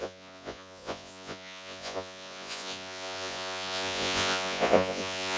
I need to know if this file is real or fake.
fake